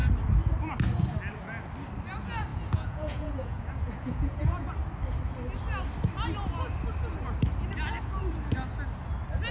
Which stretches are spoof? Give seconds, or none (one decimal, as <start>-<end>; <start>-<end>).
2.5-4.7